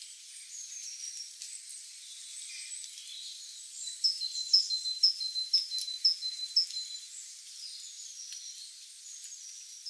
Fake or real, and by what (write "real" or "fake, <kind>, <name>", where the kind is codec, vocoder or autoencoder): real